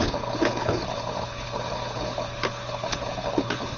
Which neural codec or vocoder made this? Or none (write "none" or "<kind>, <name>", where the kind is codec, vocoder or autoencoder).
codec, HILCodec